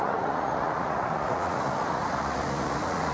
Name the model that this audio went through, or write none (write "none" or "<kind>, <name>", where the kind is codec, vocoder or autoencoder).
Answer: vocoder, Vocos